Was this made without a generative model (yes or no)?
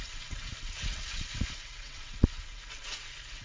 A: no